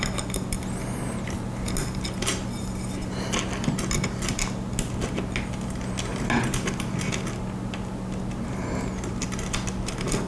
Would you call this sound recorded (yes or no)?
yes